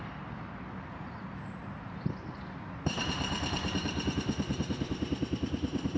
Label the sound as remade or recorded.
remade